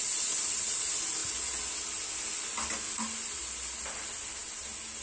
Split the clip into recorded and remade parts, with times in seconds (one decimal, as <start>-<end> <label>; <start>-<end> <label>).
0.0-5.0 recorded